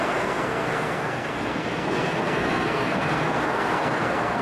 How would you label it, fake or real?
fake